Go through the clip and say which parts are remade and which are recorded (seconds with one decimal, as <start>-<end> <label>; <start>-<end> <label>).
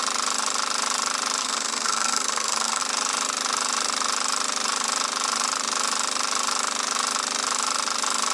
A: 0.0-1.4 recorded; 1.4-2.8 remade; 2.8-8.3 recorded